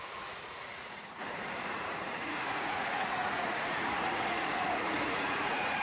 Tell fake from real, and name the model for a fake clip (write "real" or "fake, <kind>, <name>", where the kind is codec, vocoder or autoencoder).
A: fake, vocoder, Vocos